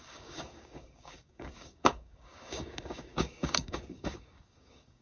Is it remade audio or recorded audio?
remade